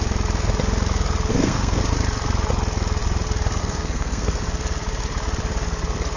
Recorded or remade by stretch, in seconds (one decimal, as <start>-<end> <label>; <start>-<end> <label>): 0.0-1.3 recorded; 1.3-1.8 remade; 1.8-3.6 recorded; 3.6-4.4 remade; 4.4-6.2 recorded